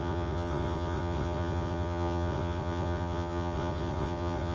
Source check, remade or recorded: remade